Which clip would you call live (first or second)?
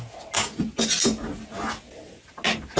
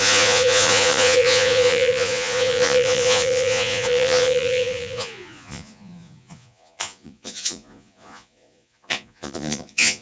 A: first